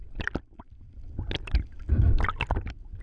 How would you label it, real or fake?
real